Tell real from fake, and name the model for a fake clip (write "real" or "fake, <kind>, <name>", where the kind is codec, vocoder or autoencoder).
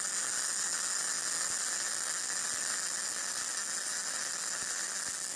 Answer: real